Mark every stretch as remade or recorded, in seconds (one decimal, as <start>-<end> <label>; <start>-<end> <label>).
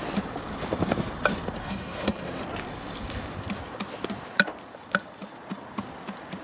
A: 0.0-1.6 recorded; 1.6-2.4 remade; 2.4-6.4 recorded